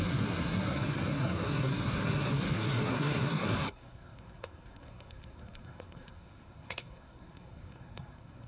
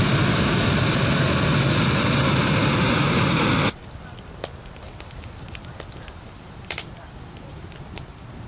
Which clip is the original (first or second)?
second